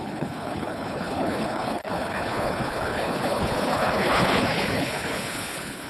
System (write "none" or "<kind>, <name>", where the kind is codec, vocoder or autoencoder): codec, HILCodec